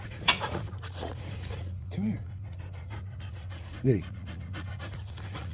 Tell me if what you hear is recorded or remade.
remade